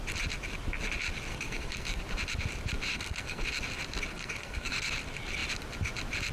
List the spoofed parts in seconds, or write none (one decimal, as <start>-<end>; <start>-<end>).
1.3-2.0; 2.9-3.5; 4.1-4.9